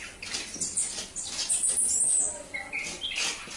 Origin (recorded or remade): recorded